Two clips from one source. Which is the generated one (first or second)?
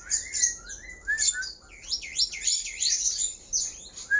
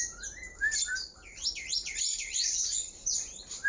second